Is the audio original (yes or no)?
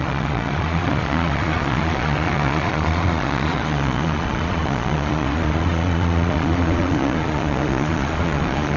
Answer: no